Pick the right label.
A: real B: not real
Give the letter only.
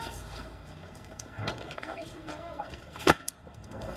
B